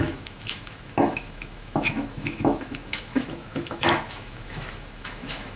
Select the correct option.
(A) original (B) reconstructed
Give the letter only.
B